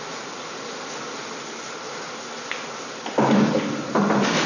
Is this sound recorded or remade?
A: recorded